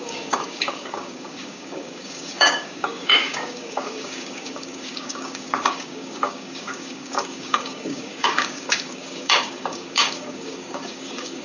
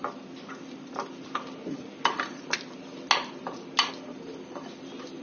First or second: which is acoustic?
second